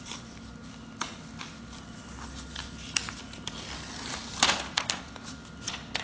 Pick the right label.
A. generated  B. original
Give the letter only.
B